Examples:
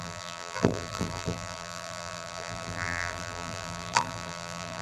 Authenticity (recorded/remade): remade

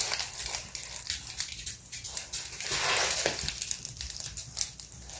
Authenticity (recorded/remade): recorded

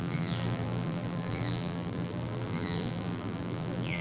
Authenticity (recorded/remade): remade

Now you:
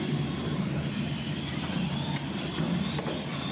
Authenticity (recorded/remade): remade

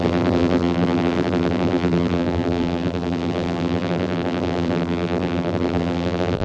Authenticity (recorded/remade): remade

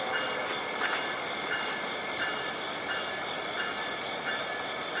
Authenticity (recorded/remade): remade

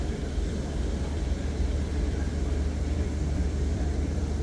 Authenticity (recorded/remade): remade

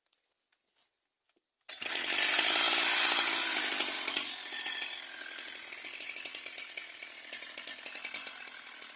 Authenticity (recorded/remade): recorded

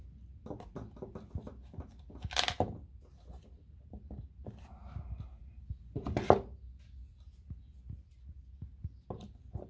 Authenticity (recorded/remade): recorded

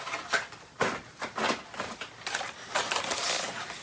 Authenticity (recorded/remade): recorded